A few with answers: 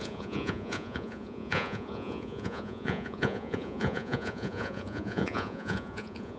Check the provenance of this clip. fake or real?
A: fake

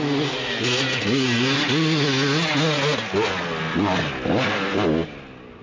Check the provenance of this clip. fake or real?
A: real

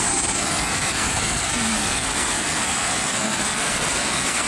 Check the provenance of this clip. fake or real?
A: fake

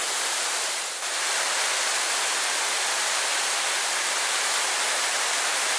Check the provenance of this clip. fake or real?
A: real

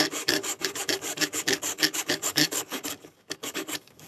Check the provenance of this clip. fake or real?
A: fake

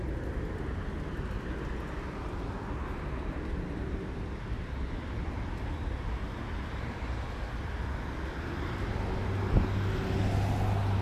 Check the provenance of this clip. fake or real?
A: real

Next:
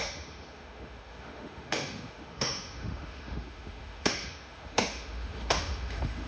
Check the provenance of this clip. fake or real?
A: fake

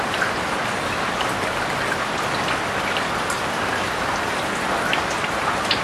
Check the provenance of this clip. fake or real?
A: real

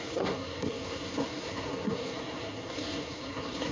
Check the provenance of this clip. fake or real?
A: fake